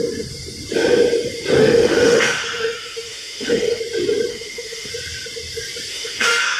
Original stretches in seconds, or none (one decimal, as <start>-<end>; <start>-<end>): 0.0-1.6; 3.8-4.3; 4.9-5.9